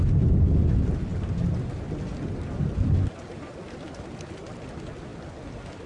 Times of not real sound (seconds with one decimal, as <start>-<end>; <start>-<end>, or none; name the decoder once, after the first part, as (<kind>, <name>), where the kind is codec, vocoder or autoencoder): none